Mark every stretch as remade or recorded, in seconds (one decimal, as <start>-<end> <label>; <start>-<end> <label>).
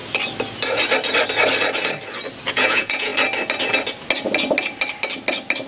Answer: 0.0-2.5 recorded; 2.5-3.1 remade; 3.1-5.7 recorded